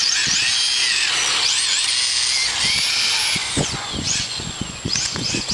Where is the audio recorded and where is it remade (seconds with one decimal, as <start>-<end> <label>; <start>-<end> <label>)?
0.0-3.4 recorded; 3.4-5.5 remade